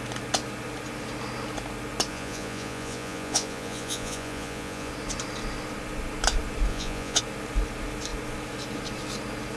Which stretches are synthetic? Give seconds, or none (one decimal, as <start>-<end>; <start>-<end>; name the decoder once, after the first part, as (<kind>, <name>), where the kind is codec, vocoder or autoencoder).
2.1-4.9 (vocoder, Vocos); 6.7-7.2